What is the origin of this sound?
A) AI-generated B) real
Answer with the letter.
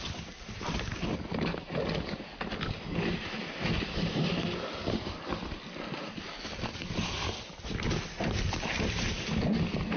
B